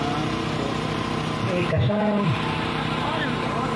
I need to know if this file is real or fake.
fake